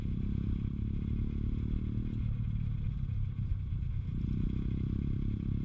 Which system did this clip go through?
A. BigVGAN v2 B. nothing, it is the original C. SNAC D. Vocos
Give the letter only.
B